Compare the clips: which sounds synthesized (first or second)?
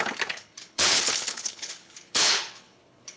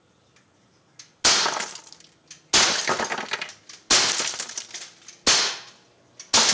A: first